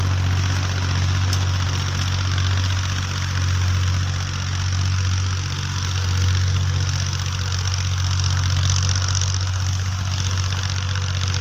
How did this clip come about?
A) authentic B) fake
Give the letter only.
A